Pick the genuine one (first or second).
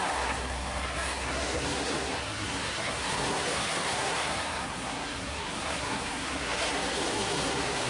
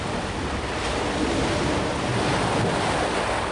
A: second